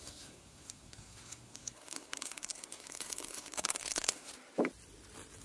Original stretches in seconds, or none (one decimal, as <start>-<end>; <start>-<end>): 4.3-5.4